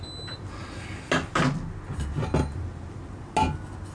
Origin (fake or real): real